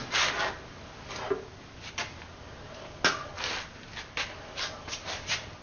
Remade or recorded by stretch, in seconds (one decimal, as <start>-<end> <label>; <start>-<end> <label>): 0.0-5.6 recorded